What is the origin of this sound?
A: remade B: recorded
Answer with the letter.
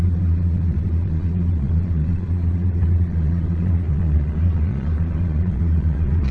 A